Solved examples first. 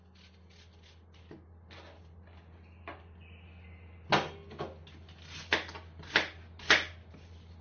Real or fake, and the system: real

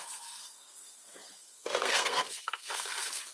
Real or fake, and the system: fake, codec, SNAC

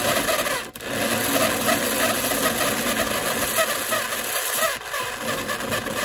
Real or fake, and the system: real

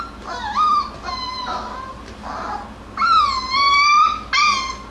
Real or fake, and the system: real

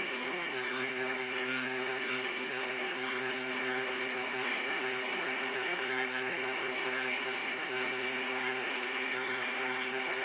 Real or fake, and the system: fake, codec, SNAC